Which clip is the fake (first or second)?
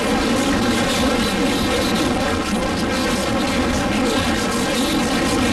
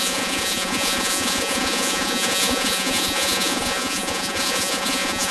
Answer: second